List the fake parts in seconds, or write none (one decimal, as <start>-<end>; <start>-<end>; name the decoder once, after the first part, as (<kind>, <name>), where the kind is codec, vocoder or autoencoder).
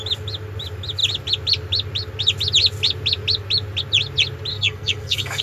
4.5-5.4 (codec, SNAC)